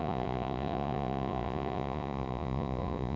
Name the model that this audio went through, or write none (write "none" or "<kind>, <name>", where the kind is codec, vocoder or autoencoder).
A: vocoder, Vocos